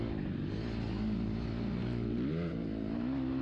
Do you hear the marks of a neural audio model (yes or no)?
no